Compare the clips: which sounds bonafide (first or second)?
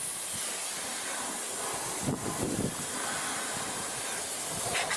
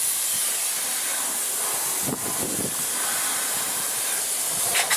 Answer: first